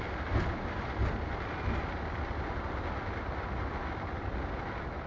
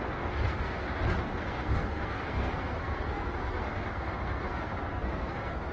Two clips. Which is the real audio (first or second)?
first